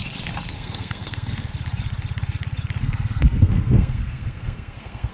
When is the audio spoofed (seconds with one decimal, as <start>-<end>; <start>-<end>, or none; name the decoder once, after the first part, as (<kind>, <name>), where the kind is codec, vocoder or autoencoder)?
0.5-1.5 (codec, SNAC); 2.8-5.1